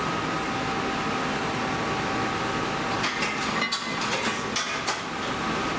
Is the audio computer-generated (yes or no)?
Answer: no